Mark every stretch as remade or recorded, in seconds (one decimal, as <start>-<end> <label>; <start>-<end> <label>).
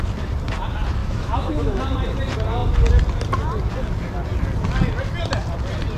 0.0-1.0 recorded; 1.0-1.8 remade; 1.8-6.0 recorded